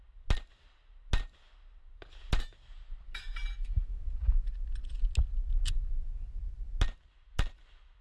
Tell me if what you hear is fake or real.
real